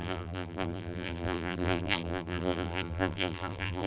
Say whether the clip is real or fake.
fake